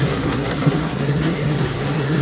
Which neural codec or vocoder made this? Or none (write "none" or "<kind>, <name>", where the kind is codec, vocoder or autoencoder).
codec, SNAC